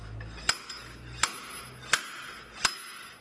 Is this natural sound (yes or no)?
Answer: yes